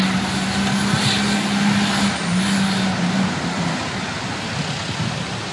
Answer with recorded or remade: recorded